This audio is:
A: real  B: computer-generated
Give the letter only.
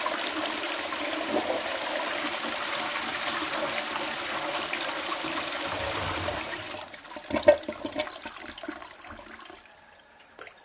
A